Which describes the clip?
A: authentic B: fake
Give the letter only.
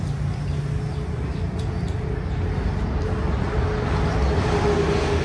A